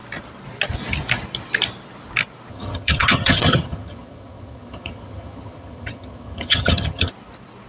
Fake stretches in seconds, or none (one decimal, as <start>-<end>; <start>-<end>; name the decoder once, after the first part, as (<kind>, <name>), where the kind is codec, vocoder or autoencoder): 2.5-7.1 (vocoder, HiFi-GAN)